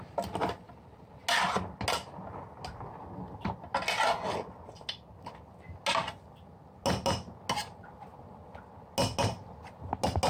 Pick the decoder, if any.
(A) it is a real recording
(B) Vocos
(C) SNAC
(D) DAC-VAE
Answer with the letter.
A